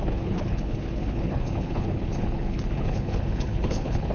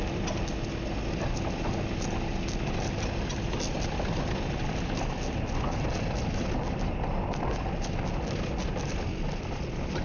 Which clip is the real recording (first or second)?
second